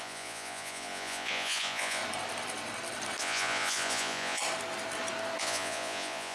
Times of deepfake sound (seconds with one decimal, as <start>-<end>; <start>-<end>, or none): 0.0-2.0; 3.2-4.4; 5.4-6.3